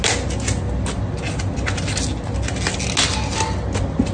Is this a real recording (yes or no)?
yes